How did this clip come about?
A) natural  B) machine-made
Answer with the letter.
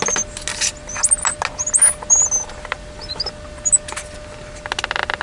A